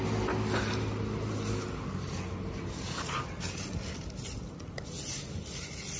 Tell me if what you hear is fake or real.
real